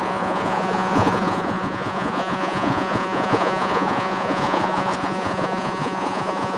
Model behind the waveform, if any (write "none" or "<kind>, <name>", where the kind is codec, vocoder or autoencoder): vocoder, Vocos